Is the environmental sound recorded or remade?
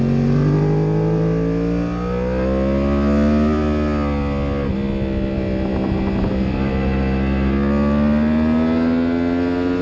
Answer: recorded